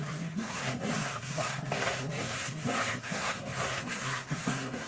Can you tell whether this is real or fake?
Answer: fake